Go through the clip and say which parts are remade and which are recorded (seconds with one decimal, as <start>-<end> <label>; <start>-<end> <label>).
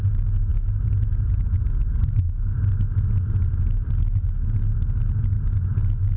0.0-6.2 recorded